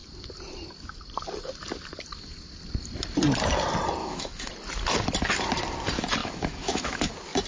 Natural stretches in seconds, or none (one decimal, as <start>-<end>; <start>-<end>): 0.0-4.0; 4.5-6.2; 7.1-7.5